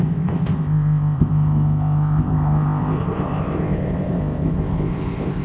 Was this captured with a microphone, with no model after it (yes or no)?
no